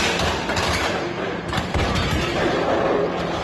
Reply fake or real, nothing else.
fake